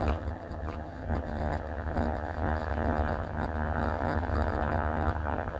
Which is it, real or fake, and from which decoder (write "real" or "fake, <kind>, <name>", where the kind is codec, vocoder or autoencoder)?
fake, vocoder, HiFi-GAN